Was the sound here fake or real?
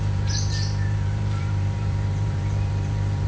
fake